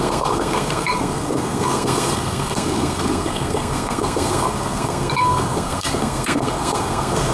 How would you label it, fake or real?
fake